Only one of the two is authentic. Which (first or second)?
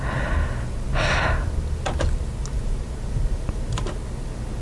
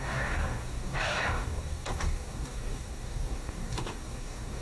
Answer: first